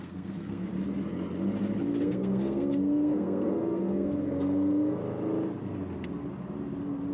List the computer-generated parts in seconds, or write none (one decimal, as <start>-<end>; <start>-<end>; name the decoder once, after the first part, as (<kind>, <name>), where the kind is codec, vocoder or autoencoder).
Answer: 0.0-0.7 (codec, SNAC); 2.0-5.0